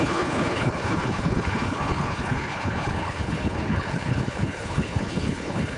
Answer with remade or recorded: remade